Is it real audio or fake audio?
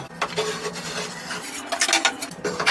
real